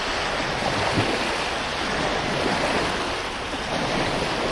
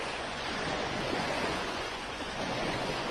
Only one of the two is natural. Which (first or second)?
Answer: first